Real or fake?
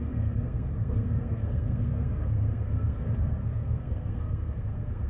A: fake